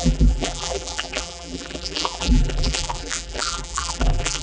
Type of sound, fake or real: fake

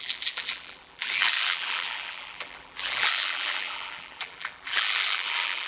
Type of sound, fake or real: fake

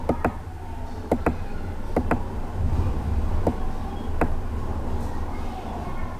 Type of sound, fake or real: real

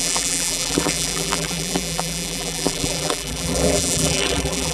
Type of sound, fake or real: fake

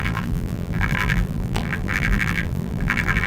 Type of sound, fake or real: fake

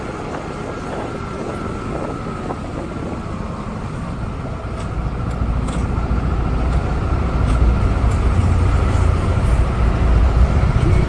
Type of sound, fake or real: real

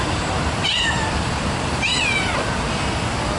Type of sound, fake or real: real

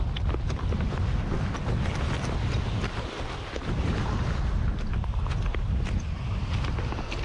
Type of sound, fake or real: real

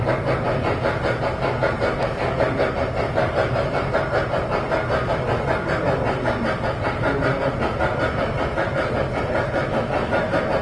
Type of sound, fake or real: real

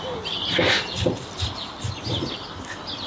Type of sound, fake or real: real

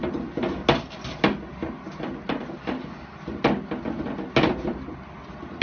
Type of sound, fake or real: real